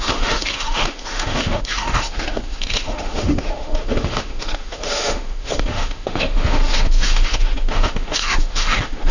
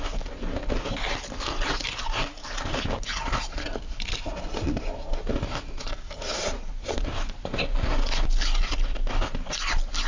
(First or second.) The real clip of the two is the second